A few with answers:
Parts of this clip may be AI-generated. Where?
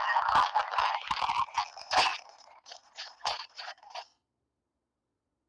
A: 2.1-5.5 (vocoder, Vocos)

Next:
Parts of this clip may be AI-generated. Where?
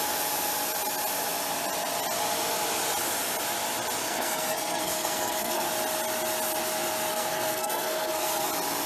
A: 4.0-5.7 (codec, SNAC); 7.1-8.5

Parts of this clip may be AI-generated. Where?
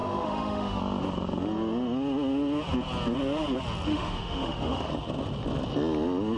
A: 0.0-0.8 (autoencoder, DAC-VAE); 3.9-4.9